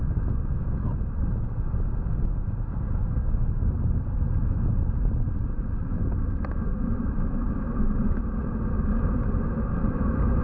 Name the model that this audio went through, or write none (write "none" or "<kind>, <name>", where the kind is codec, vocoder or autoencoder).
none